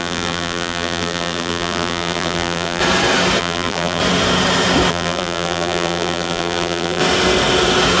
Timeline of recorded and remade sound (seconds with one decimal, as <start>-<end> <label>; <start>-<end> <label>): 0.0-2.8 remade; 2.8-3.4 recorded; 3.4-4.0 remade; 4.0-4.9 recorded; 4.9-7.0 remade; 7.0-8.0 recorded